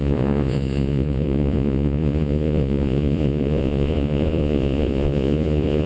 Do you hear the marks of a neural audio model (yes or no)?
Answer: yes